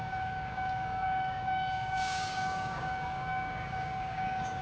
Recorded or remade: remade